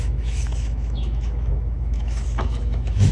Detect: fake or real fake